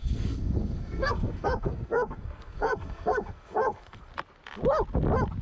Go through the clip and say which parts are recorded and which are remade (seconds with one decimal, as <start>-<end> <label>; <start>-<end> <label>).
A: 0.0-4.1 remade; 4.1-5.4 recorded